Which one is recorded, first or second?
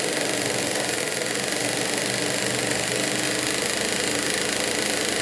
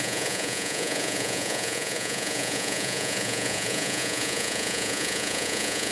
first